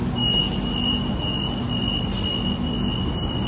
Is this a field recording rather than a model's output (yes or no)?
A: yes